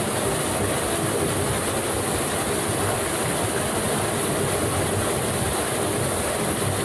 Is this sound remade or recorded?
recorded